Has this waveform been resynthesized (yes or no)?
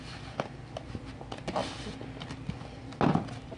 no